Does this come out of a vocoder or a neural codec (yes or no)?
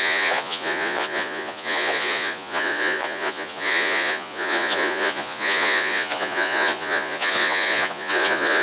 yes